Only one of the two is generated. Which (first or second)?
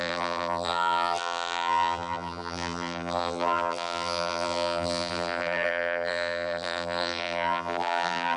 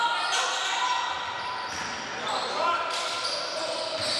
first